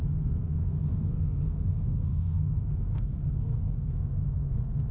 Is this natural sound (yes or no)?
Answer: no